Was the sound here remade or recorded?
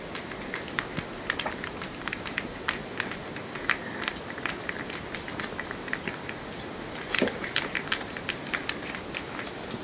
recorded